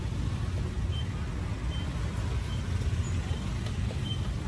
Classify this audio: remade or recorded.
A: recorded